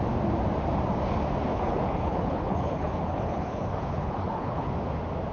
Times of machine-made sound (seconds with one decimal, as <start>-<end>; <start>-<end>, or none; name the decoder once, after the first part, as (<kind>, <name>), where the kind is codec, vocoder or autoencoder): 1.5-4.7 (codec, HILCodec)